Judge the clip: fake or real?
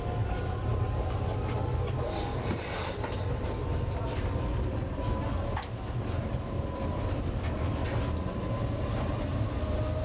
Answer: real